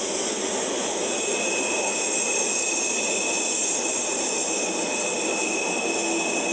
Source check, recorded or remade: recorded